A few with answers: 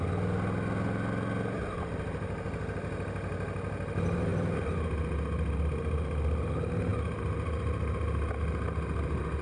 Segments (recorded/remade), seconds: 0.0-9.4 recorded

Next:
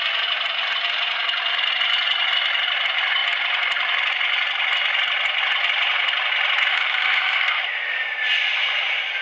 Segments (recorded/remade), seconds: 0.0-6.7 recorded; 6.7-7.6 remade; 7.6-9.2 recorded

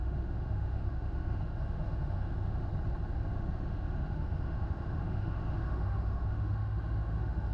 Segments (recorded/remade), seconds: 0.0-2.7 remade; 2.7-3.3 recorded; 3.3-7.5 remade

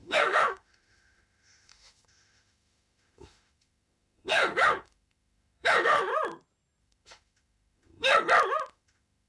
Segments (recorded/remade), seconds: 0.0-6.1 remade; 6.1-6.8 recorded; 6.8-8.1 remade; 8.1-8.7 recorded; 8.7-9.3 remade